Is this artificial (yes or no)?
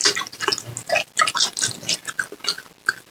no